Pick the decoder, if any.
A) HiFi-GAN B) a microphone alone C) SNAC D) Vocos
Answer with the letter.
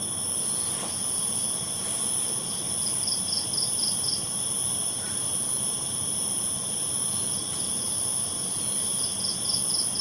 B